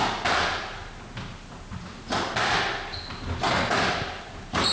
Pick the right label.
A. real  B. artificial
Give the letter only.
A